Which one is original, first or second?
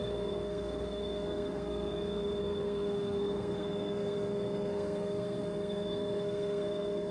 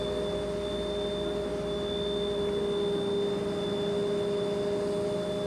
second